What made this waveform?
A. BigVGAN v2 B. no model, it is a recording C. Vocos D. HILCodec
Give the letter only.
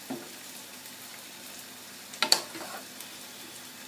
B